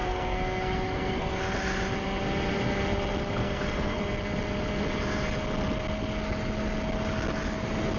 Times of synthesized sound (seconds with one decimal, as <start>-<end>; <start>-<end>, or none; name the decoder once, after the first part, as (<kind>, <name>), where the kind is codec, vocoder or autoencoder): 0.0-1.4 (codec, SNAC); 3.4-4.0

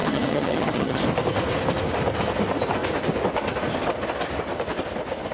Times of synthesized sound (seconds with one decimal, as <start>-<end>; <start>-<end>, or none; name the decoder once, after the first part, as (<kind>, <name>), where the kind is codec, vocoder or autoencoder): 0.0-1.0 (vocoder, HiFi-GAN)

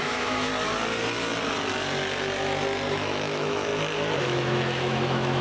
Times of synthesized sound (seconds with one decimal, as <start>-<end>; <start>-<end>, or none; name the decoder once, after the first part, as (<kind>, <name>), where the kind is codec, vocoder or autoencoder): 0.0-0.5 (autoencoder, DAC-VAE); 2.9-3.7; 4.2-5.4

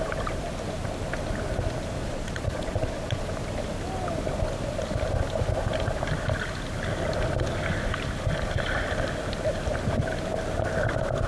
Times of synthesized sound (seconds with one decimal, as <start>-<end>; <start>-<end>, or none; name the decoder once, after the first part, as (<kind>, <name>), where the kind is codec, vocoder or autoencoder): 2.0-3.2 (vocoder, Vocos)

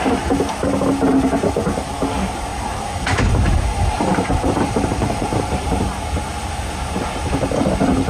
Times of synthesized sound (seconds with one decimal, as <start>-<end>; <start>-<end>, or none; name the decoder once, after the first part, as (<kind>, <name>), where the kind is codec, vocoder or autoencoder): 2.5-5.4 (vocoder, BigVGAN v2); 7.2-8.1

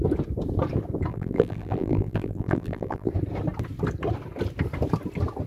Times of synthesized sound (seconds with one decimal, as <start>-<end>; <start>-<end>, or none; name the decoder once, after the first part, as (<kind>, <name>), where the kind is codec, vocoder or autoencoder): 1.1-3.1 (vocoder, BigVGAN v2)

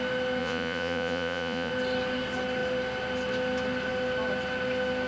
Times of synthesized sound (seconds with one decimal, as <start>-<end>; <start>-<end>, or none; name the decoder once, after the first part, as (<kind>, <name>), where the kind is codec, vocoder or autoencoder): 0.4-1.7 (vocoder, Vocos)